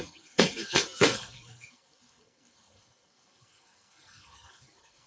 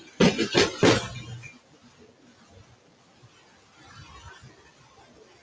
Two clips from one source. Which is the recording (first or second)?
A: second